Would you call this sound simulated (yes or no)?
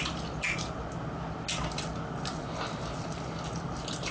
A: no